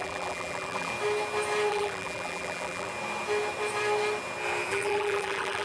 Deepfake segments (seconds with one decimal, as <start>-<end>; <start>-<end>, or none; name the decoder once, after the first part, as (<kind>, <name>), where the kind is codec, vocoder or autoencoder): 0.0-0.9 (vocoder, BigVGAN v2); 1.7-2.9; 4.7-5.6